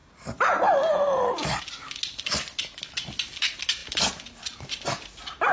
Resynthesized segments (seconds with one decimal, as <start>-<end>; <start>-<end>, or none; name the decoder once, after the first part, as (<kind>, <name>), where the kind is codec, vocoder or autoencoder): 0.0-1.6 (vocoder, BigVGAN v2)